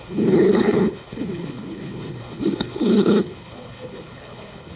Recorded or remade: remade